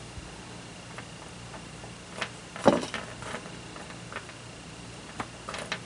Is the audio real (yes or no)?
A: yes